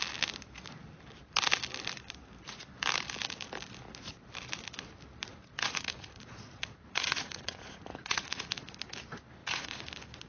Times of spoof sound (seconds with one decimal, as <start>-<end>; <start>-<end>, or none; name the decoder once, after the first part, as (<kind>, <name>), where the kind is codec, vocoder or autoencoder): 5.3-8.7 (vocoder, Vocos); 9.4-9.9